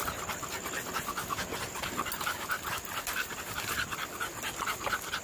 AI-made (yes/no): no